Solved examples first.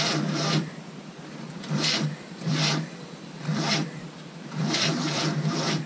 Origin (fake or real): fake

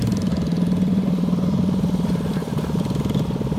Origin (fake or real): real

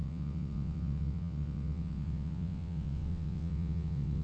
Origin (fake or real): fake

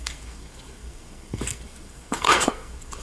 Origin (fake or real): fake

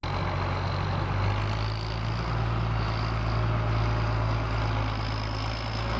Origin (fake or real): real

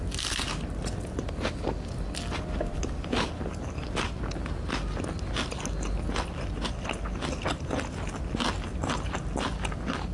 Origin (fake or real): real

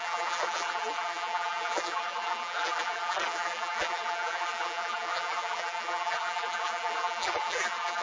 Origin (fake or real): fake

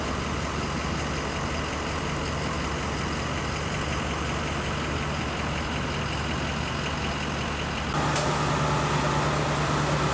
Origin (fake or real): real